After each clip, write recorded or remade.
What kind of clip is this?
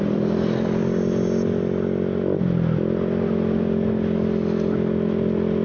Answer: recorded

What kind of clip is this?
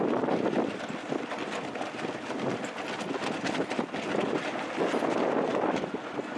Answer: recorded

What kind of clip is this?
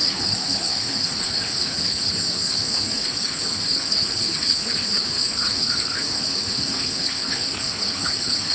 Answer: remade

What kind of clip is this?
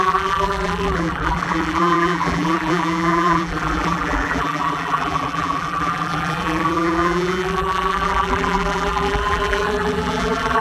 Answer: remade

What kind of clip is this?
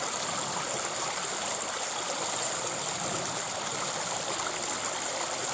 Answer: recorded